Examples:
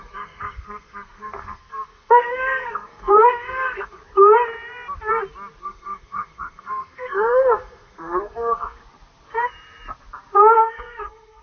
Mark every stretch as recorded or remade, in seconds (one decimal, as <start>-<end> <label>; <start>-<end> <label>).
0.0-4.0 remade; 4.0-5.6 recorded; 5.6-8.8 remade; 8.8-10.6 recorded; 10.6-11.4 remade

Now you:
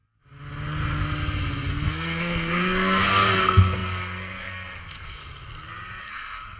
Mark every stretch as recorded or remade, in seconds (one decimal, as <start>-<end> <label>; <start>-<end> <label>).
0.0-1.7 recorded; 1.7-5.2 remade; 5.2-6.0 recorded; 6.0-6.6 remade

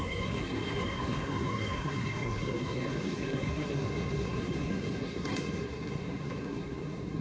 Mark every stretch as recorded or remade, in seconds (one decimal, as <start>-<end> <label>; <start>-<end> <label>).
0.0-7.2 remade

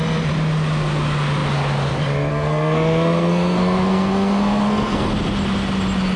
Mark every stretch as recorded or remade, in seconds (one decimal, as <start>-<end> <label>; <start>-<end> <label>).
0.0-2.3 recorded; 2.3-5.1 remade; 5.1-6.2 recorded

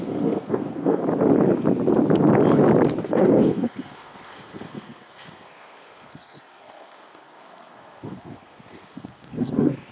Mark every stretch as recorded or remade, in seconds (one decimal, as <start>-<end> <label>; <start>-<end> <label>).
0.0-1.0 remade; 1.0-3.0 recorded; 3.0-9.9 remade